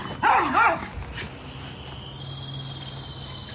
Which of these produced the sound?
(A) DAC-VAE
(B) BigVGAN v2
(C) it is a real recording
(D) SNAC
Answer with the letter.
C